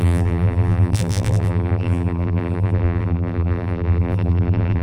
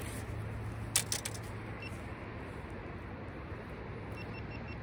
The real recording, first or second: second